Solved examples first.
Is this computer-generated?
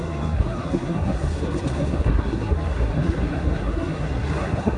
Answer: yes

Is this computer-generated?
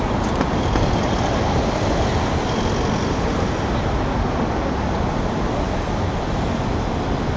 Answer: no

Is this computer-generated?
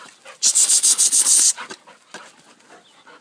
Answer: no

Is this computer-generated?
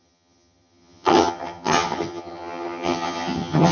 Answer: yes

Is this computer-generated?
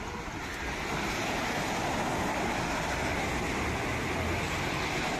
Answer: no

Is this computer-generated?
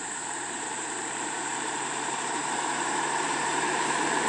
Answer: yes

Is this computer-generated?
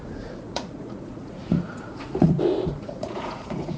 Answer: yes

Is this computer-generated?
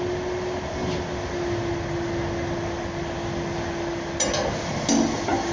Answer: no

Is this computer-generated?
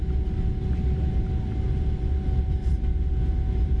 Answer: no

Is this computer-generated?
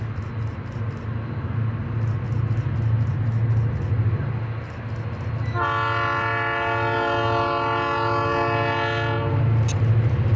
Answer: no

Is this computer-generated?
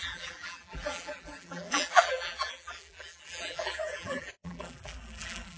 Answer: yes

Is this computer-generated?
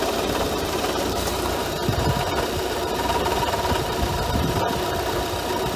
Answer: yes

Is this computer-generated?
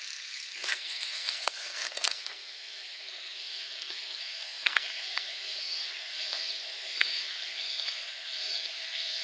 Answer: yes